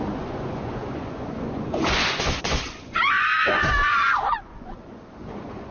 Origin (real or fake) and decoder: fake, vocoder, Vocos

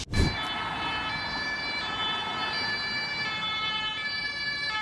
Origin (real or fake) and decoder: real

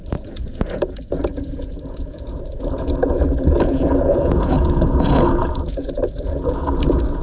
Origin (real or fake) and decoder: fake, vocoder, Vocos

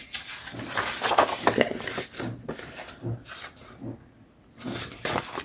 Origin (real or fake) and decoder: real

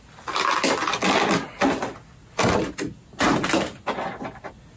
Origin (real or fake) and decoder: real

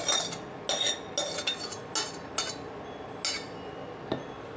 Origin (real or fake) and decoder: real